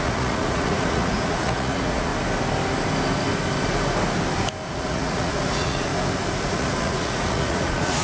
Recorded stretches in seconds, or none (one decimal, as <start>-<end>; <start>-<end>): 2.1-4.7; 5.9-6.4